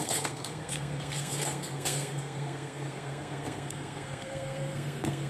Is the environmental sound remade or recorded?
remade